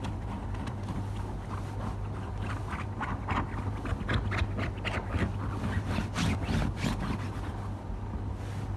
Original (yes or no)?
yes